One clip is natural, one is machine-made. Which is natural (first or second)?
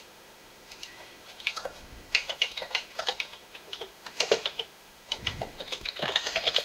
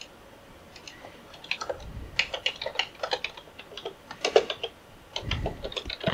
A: second